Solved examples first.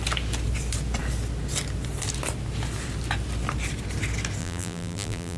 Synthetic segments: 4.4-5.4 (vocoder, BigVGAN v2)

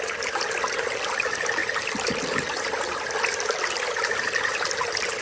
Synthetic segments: 1.6-2.2 (vocoder, BigVGAN v2)